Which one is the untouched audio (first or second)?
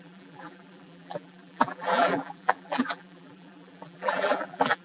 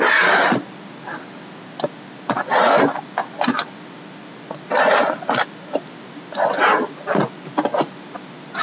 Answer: second